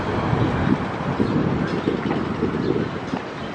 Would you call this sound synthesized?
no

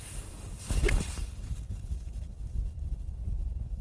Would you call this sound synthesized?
yes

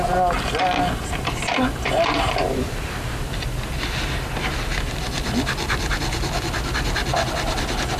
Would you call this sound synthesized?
no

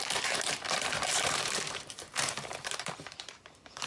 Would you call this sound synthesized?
yes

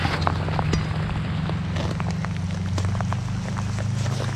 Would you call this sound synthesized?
no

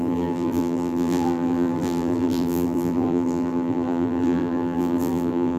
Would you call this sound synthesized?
yes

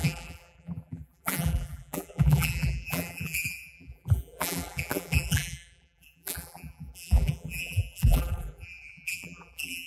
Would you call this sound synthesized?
yes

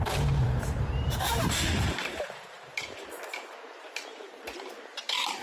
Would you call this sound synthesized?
yes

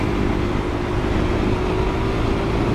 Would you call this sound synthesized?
no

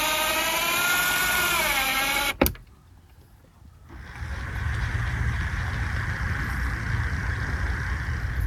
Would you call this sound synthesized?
no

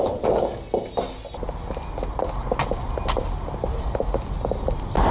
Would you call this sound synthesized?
no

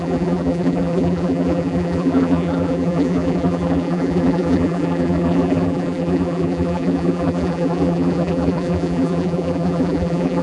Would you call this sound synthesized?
yes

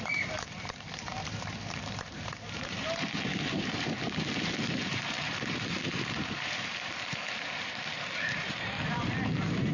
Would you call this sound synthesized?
yes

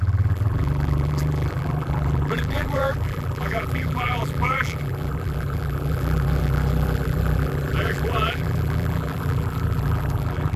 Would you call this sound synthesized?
yes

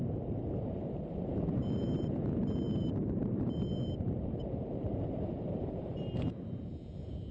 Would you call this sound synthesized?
yes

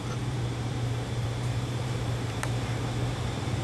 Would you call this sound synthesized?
yes